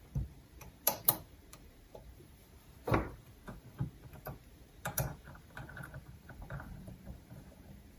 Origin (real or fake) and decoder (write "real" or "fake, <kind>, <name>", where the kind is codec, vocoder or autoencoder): fake, vocoder, BigVGAN v2